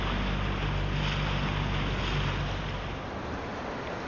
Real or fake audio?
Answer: real